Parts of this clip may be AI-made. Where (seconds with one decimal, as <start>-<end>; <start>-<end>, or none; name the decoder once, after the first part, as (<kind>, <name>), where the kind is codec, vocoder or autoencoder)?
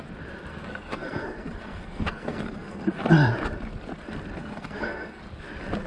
0.5-3.1 (codec, SNAC); 4.4-5.2